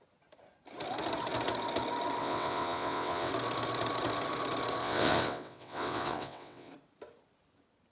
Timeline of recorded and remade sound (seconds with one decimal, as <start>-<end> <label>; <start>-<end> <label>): 0.0-2.2 recorded; 2.2-3.3 remade; 3.3-4.8 recorded; 4.8-6.7 remade; 6.7-7.9 recorded